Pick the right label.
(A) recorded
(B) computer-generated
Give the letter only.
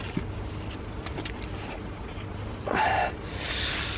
A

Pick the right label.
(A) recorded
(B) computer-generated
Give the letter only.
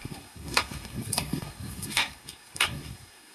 B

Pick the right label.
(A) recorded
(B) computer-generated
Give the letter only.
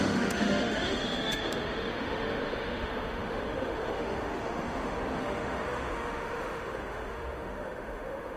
B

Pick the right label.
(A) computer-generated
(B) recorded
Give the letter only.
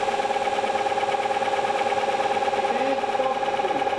B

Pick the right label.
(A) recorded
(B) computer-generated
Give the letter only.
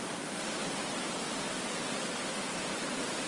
A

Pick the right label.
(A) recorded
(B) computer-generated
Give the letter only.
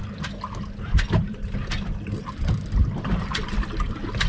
A